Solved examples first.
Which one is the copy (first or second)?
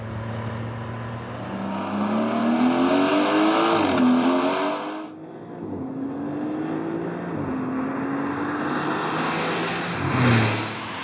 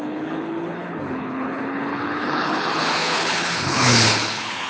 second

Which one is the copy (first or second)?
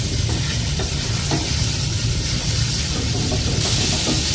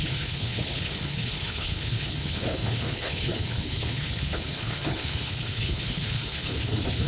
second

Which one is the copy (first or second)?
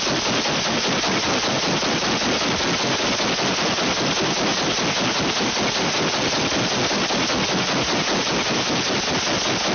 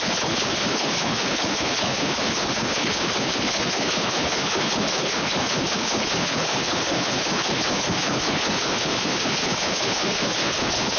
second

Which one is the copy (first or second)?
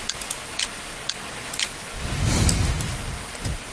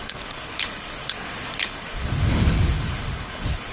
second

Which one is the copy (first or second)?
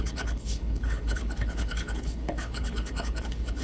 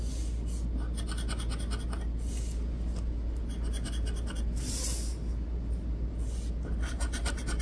first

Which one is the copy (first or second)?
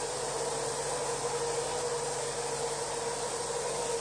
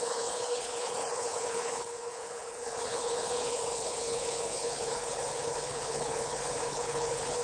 second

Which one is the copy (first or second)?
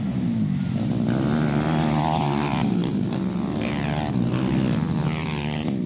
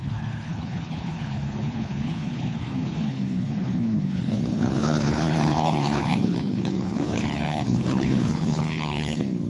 second